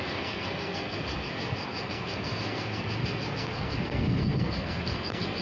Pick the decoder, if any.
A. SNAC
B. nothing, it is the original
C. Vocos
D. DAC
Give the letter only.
A